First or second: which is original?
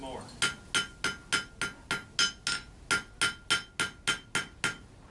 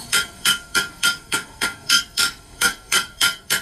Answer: first